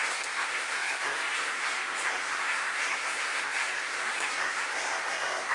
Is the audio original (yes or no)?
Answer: no